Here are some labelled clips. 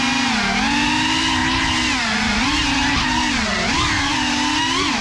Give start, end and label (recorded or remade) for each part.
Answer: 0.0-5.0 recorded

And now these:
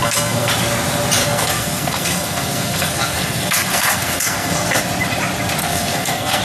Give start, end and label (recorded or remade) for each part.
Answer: 0.0-0.5 remade; 0.5-1.2 recorded; 1.2-4.8 remade; 4.8-5.6 recorded; 5.6-6.4 remade

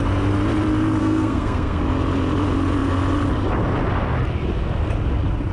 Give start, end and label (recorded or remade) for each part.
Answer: 0.0-1.0 recorded; 1.0-1.8 remade; 1.8-5.5 recorded

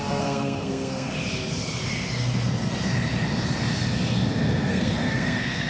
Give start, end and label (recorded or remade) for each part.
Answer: 0.0-1.1 remade; 1.1-4.5 recorded; 4.5-5.7 remade

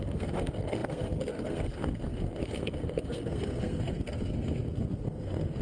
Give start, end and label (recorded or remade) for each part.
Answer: 0.0-5.6 remade

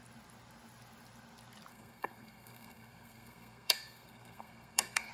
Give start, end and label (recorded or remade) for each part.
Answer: 0.0-1.7 recorded; 1.7-5.1 remade

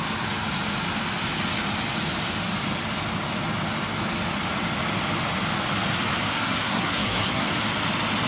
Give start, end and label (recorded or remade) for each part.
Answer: 0.0-6.3 recorded; 6.3-7.5 remade; 7.5-8.3 recorded